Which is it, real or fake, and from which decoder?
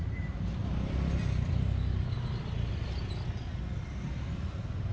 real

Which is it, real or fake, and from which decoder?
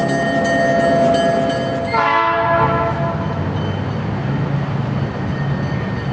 real